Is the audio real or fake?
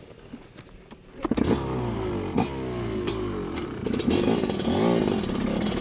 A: real